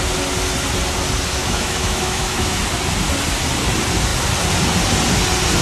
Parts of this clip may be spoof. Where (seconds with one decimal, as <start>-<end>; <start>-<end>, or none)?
1.4-2.6